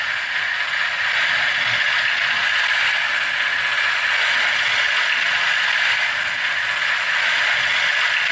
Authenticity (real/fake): real